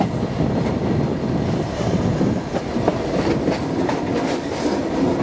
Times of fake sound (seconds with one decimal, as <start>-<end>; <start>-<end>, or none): none

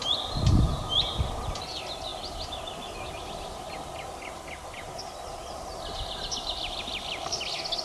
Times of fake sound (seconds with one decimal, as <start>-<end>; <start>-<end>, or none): none

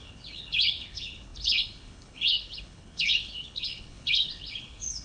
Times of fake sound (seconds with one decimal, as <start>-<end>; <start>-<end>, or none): 0.0-5.0

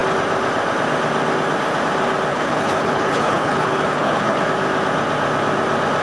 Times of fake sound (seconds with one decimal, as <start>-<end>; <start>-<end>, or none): 2.3-4.4